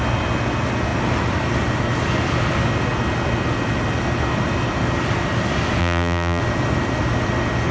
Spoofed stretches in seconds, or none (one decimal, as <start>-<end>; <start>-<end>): 5.8-6.4